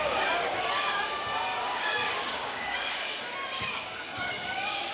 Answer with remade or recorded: remade